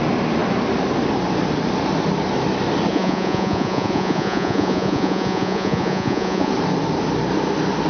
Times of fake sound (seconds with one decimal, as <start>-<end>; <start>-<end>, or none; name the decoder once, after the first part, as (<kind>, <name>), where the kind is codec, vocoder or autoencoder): 2.9-6.5 (vocoder, Vocos)